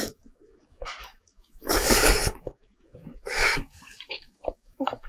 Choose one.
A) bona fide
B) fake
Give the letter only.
B